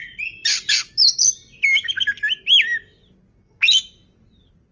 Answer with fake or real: real